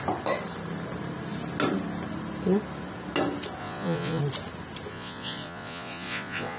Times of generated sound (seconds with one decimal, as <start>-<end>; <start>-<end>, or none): 3.6-4.2; 4.9-6.6